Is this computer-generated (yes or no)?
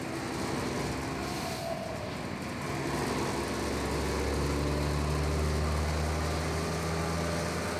no